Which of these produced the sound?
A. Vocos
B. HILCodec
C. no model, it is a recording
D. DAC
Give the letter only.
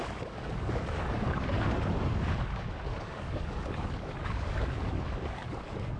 D